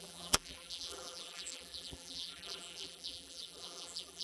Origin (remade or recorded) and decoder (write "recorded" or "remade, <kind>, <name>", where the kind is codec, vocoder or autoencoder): remade, vocoder, BigVGAN v2